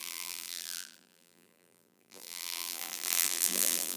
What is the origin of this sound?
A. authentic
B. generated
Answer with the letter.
B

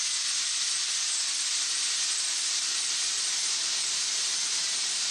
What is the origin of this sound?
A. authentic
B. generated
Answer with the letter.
A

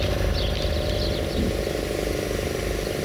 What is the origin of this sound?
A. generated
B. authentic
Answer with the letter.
B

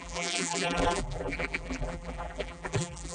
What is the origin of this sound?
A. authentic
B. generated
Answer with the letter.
B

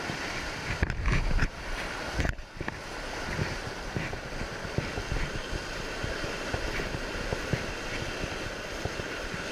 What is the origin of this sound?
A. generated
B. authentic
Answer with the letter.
B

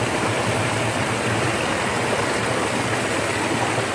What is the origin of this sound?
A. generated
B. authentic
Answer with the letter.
B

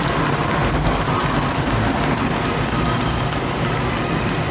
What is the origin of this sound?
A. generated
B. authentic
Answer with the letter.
B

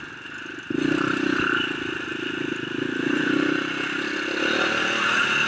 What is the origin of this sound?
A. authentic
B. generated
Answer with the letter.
A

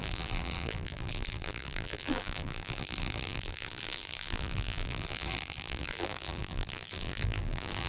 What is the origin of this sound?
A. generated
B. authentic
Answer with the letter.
A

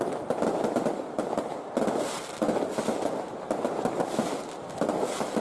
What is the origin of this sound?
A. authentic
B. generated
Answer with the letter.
A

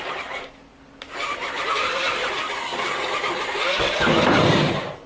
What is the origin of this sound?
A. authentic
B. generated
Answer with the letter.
B